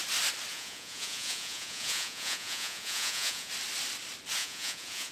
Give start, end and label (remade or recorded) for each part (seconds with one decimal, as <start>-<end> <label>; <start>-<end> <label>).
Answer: 0.0-0.5 recorded; 0.5-3.5 remade; 3.5-4.4 recorded; 4.4-5.1 remade